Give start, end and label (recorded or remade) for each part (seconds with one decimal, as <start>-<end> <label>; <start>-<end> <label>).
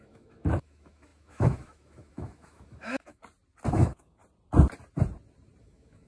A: 0.0-3.2 remade; 3.2-3.7 recorded; 3.7-4.2 remade; 4.2-5.6 recorded; 5.6-6.1 remade